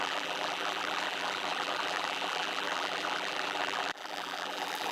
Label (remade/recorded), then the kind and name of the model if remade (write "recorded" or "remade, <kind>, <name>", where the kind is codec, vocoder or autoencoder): remade, vocoder, BigVGAN v2